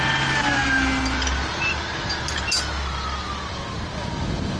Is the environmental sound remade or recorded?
recorded